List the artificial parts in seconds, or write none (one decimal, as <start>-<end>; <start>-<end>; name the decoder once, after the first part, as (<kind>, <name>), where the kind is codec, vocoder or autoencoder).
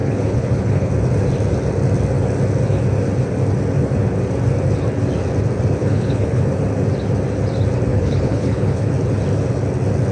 0.0-0.9 (codec, HILCodec); 5.8-6.4; 7.9-8.9